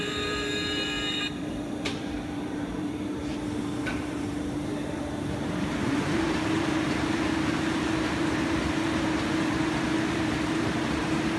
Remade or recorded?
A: remade